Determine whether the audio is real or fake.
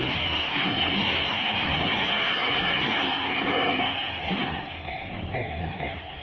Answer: fake